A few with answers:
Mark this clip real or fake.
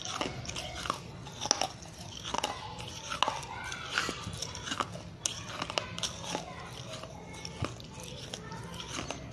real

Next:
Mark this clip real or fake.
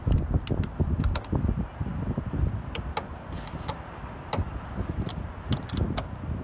real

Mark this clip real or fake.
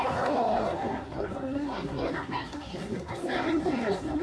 fake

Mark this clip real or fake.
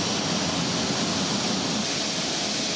real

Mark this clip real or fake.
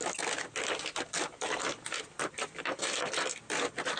real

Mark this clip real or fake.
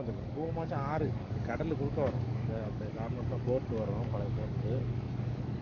fake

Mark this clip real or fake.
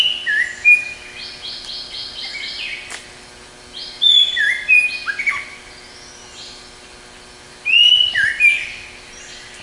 real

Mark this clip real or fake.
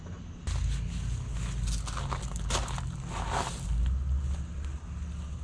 real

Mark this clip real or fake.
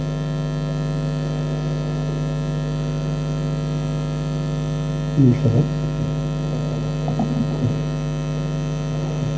fake